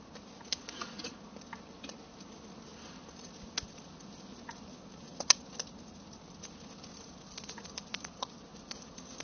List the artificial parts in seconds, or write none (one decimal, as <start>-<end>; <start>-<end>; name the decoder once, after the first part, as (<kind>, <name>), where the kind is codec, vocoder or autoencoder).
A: none

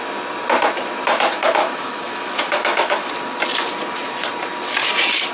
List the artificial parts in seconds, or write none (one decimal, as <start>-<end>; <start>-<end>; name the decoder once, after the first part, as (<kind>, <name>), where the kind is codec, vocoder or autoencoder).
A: 1.6-3.1 (autoencoder, DAC-VAE)

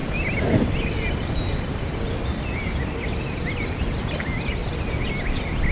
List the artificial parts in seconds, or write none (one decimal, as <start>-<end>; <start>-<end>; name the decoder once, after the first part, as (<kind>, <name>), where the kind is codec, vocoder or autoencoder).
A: 0.0-3.4 (vocoder, BigVGAN v2); 4.6-5.1

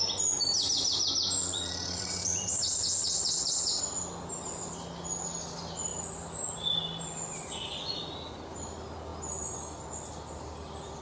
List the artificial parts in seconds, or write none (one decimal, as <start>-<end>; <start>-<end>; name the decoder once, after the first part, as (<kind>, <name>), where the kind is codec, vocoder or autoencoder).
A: 1.4-3.8 (vocoder, WaveNeXt)

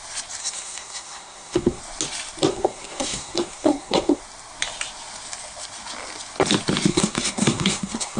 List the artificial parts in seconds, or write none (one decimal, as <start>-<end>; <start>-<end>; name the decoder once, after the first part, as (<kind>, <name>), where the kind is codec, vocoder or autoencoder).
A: 0.4-1.8 (codec, SNAC); 2.5-4.2; 6.9-8.2